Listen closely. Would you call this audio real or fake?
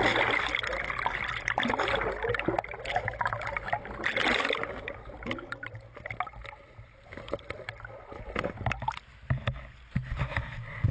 real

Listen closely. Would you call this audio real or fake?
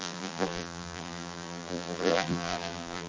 fake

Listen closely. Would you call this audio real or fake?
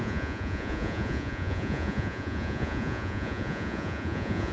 fake